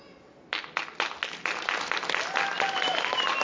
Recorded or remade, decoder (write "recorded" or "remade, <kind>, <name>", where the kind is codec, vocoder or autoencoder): recorded